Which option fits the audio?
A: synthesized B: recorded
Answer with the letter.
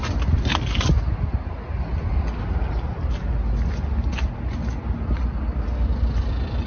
B